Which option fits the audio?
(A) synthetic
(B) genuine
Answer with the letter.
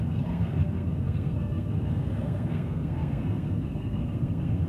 A